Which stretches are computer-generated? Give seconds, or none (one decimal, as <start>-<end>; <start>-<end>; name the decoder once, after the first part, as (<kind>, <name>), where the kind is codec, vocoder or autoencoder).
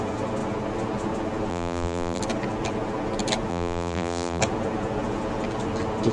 1.5-2.2 (vocoder, BigVGAN v2); 3.5-4.4